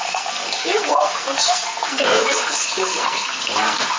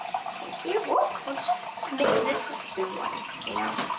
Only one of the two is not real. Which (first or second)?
first